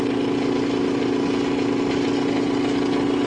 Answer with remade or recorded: recorded